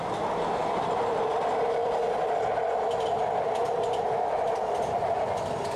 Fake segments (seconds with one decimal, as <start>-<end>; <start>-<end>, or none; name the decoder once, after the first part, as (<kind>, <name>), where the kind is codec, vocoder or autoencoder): none